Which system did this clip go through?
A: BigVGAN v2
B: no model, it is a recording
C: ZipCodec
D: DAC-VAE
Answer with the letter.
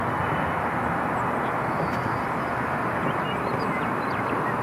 B